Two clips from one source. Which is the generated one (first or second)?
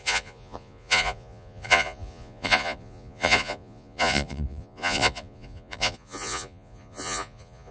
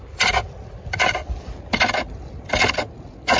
first